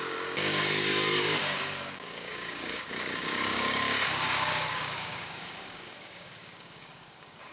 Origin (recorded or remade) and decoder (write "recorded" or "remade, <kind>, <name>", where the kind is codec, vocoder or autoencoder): remade, codec, DAC